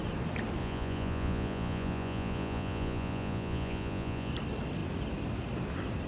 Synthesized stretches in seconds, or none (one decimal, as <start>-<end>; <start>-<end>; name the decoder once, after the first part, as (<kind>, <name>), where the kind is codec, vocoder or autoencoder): 0.6-4.3 (vocoder, Vocos)

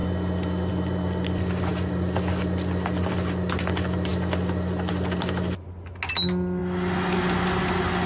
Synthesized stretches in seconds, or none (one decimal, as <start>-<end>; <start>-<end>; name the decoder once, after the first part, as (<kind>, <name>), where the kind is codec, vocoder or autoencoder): none

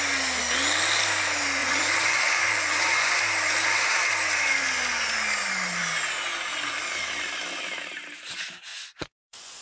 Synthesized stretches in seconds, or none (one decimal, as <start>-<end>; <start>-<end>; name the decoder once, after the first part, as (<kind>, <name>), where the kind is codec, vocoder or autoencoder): 1.6-3.1 (vocoder, Vocos); 8.7-9.6

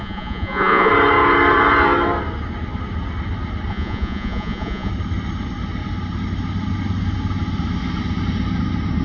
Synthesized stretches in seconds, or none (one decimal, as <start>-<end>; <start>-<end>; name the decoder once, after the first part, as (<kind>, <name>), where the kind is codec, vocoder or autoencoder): 0.0-0.9 (vocoder, Vocos); 3.7-4.9

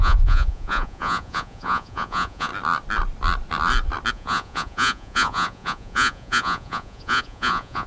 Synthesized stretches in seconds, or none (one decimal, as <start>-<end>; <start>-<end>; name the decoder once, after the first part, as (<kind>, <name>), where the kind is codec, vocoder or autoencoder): 0.0-2.5 (vocoder, Vocos); 4.1-7.9

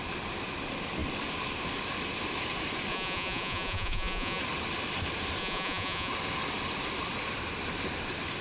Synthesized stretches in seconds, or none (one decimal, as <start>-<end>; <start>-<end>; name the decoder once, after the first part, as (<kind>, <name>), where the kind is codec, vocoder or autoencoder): 2.9-4.4 (vocoder, Vocos); 5.4-6.1